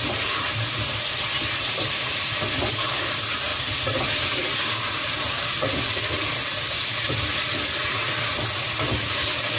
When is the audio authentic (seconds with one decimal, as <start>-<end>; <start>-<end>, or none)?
0.0-9.6